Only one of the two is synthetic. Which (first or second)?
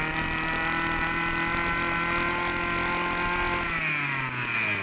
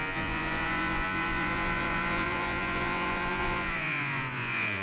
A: second